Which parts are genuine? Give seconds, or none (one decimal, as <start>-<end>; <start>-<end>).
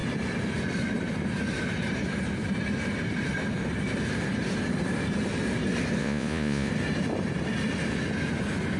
0.0-6.0; 6.7-8.8